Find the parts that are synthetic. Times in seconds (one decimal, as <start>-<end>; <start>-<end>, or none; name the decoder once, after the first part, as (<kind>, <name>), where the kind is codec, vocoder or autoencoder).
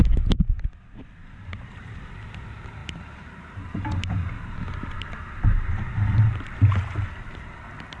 1.2-2.1 (vocoder, BigVGAN v2); 2.8-7.6